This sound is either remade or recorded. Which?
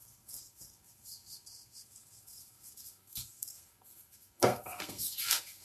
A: remade